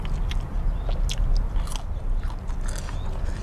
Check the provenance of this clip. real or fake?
real